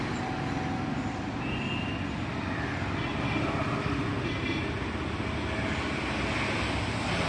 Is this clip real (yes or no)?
yes